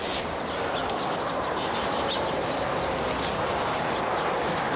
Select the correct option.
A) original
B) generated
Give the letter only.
A